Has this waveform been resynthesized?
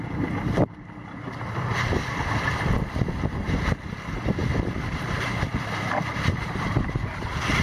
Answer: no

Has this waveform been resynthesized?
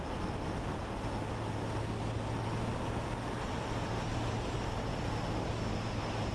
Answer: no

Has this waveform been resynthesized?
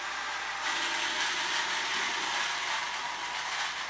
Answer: no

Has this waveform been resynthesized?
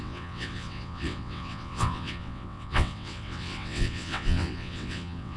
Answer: yes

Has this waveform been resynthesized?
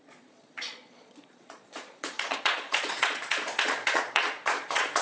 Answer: yes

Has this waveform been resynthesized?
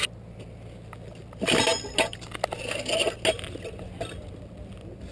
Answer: no